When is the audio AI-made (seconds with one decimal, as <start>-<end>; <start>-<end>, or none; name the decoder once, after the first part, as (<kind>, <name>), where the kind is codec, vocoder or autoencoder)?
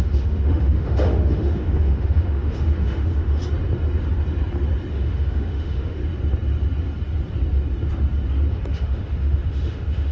0.0-3.4 (autoencoder, DAC-VAE); 4.9-6.0; 8.5-10.1